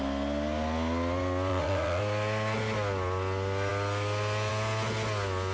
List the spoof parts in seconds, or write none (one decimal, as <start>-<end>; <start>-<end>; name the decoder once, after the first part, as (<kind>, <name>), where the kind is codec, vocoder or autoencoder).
1.5-2.0 (vocoder, Vocos)